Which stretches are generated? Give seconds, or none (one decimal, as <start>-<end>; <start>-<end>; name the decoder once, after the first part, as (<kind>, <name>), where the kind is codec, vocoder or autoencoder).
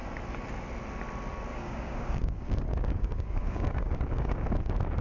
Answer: 1.5-4.5 (codec, DAC)